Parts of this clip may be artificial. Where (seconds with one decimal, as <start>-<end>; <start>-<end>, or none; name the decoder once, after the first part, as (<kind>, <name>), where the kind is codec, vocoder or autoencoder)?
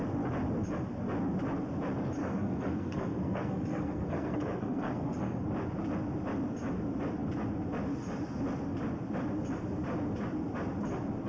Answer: 2.2-5.4 (codec, SNAC)